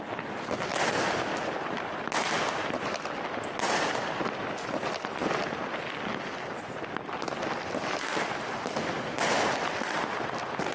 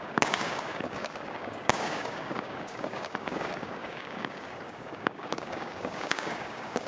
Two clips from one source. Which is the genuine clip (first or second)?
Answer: first